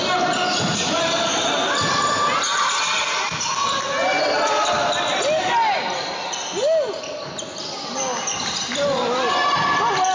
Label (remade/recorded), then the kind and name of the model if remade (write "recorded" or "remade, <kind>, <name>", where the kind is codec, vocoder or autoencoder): recorded